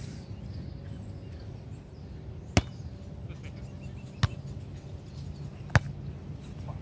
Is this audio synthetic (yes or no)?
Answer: no